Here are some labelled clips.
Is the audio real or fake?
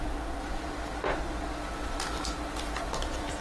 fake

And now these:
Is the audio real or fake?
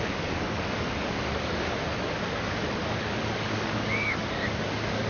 fake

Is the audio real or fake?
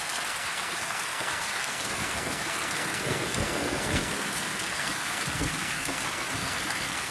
fake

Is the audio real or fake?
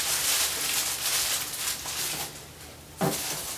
real